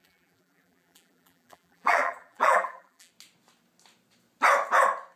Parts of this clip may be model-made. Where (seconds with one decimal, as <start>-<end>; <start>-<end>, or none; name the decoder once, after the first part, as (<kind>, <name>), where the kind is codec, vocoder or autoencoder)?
0.0-3.1 (vocoder, BigVGAN v2)